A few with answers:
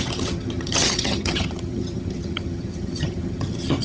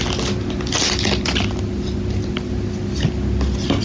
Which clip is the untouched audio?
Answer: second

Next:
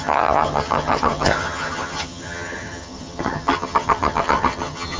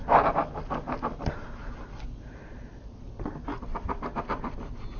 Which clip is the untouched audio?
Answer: second